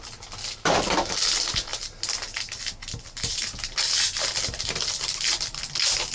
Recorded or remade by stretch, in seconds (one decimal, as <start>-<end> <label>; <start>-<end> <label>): 0.0-6.1 recorded